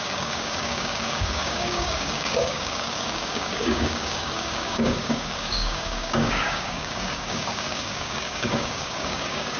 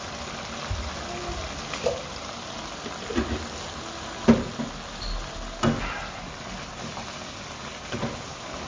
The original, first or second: second